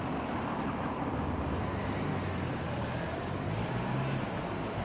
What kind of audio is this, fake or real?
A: real